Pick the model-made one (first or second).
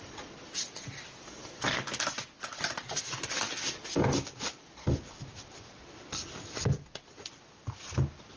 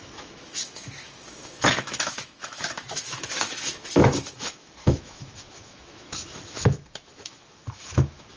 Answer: second